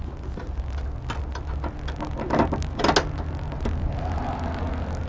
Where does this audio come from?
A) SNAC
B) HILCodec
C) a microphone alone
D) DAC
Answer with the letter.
C